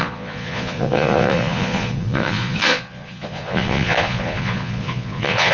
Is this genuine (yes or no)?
no